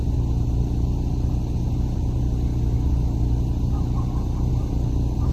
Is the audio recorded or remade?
recorded